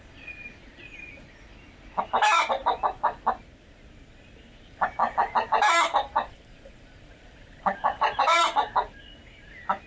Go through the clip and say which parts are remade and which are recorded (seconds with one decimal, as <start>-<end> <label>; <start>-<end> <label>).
0.0-5.0 recorded; 5.0-8.4 remade; 8.4-9.9 recorded